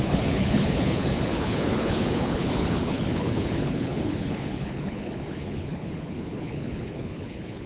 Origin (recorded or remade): remade